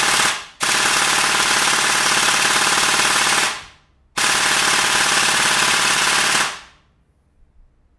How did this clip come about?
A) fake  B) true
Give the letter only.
B